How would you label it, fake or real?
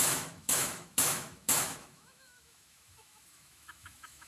fake